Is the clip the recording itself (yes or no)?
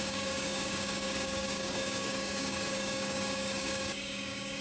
no